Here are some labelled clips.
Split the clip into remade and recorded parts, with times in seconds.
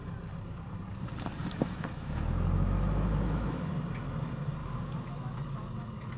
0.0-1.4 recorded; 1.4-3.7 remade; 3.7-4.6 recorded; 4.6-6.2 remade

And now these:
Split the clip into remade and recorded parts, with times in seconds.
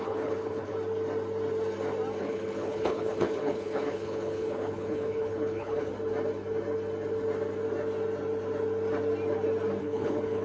0.0-0.7 remade; 0.7-2.2 recorded; 2.2-5.9 remade; 5.9-9.8 recorded; 9.8-10.4 remade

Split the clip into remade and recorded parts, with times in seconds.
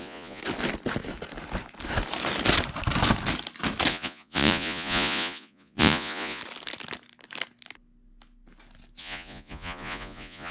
0.0-0.4 remade; 0.4-3.9 recorded; 3.9-6.4 remade; 6.4-9.0 recorded; 9.0-10.5 remade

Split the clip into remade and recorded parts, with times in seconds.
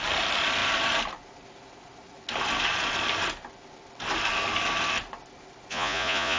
0.0-5.7 recorded; 5.7-6.4 remade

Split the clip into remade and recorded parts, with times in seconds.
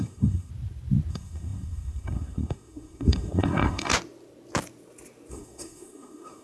0.0-0.5 remade; 0.5-1.1 recorded; 1.1-3.9 remade; 3.9-5.3 recorded; 5.3-6.4 remade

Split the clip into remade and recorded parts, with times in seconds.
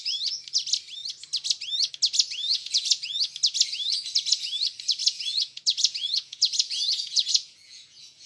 0.0-2.5 recorded; 2.5-3.2 remade; 3.2-5.0 recorded; 5.0-8.3 remade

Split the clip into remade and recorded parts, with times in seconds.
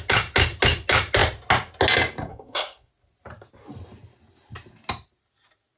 0.0-2.3 recorded; 2.3-2.9 remade; 2.9-5.8 recorded